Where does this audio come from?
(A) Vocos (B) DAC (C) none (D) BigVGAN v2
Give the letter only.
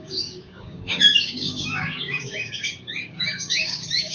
B